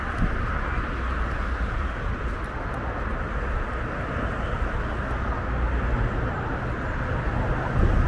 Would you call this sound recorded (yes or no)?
yes